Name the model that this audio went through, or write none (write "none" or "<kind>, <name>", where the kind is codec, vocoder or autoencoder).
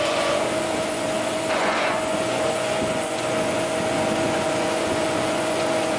vocoder, Vocos